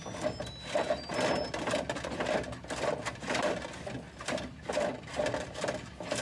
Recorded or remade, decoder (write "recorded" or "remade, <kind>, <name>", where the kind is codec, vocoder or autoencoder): recorded